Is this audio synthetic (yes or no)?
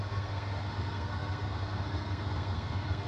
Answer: yes